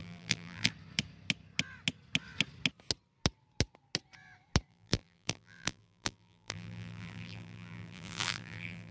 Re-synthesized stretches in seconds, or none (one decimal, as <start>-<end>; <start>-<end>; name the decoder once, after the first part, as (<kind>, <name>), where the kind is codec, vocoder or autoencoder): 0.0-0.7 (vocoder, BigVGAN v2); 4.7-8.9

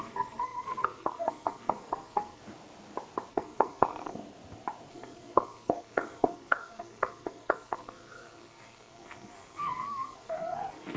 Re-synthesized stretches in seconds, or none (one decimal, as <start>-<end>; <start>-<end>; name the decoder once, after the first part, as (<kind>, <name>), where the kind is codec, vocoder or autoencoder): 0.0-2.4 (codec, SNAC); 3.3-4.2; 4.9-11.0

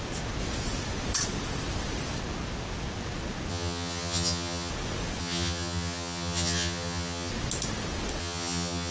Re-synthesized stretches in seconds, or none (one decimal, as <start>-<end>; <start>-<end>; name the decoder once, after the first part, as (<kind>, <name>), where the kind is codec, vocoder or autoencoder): 3.5-4.7 (vocoder, HiFi-GAN); 5.2-7.3; 8.2-8.9

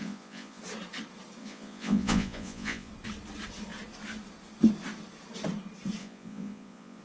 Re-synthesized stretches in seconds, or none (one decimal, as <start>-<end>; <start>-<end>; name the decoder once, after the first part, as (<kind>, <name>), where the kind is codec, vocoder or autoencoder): 0.0-0.6 (vocoder, Vocos); 1.4-2.9; 6.0-7.0

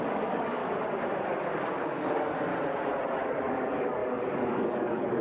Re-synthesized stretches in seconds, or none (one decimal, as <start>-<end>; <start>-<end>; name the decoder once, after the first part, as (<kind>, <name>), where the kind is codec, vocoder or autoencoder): 0.0-0.6 (codec, DAC); 1.5-2.5; 3.4-5.2